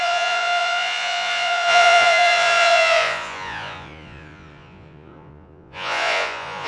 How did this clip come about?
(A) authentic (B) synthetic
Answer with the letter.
B